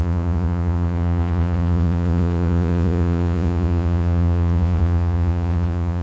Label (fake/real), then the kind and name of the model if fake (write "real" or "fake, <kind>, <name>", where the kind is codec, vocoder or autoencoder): fake, vocoder, Vocos